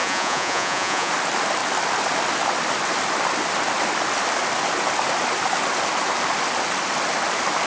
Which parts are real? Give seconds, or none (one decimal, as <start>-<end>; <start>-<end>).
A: 1.1-7.7